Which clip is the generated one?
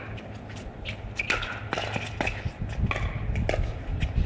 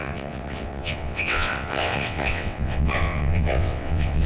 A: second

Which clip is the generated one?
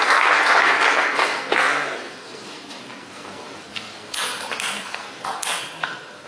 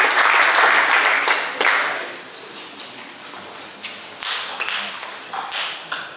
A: first